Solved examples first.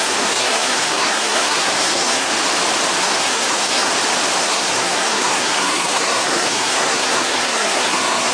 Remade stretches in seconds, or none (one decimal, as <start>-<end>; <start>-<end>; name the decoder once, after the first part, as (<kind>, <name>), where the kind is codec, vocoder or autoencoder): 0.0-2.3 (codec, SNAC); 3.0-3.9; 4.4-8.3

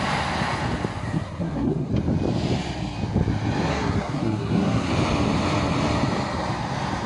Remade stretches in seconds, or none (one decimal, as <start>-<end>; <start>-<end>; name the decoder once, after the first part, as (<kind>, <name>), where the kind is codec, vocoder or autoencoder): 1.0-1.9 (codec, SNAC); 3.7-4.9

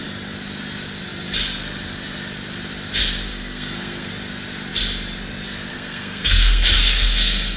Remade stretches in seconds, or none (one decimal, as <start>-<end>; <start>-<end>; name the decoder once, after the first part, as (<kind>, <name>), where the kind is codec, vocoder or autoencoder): 3.3-4.1 (codec, SNAC); 5.7-7.6